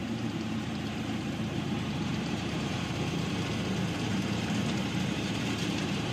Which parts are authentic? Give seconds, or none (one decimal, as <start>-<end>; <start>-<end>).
3.3-4.1